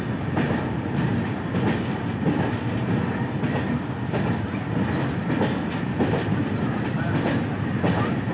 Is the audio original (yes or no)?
yes